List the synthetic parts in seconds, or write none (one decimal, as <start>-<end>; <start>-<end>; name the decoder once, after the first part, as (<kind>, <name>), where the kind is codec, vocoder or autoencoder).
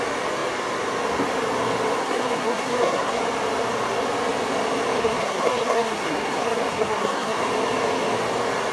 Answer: 2.0-3.2 (codec, SNAC); 5.0-7.4